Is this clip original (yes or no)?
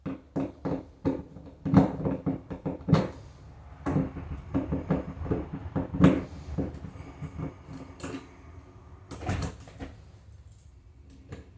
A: yes